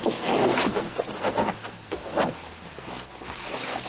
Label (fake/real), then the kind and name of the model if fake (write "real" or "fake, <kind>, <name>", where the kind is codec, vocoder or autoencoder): fake, codec, SNAC